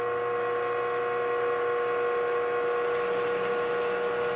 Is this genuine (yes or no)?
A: yes